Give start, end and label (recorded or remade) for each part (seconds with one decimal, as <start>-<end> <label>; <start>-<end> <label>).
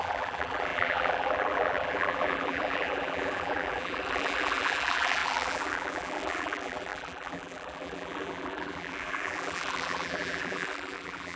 0.0-11.4 remade